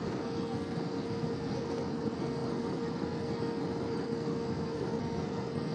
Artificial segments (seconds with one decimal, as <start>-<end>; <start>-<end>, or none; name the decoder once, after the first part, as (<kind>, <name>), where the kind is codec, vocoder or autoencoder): 0.0-5.7 (codec, SNAC)